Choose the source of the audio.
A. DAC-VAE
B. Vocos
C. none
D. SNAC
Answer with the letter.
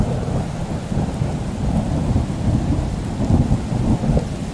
C